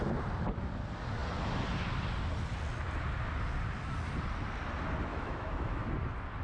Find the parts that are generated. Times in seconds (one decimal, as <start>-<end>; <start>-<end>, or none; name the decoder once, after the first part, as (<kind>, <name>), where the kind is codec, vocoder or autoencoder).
5.1-5.9 (autoencoder, DAC-VAE)